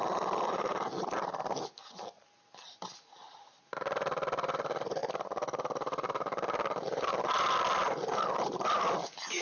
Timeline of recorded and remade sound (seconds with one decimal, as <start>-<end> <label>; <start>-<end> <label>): 0.0-9.4 recorded